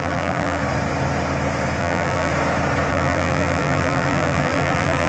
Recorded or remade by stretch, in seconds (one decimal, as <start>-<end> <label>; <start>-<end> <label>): 0.0-0.6 remade; 0.6-1.8 recorded; 1.8-2.3 remade; 2.3-2.9 recorded; 2.9-5.1 remade